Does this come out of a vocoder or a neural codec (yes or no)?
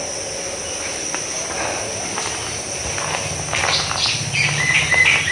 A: no